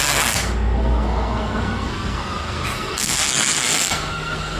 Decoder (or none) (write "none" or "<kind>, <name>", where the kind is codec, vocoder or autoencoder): codec, SNAC